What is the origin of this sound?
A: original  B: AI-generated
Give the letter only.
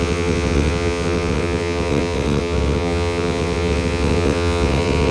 B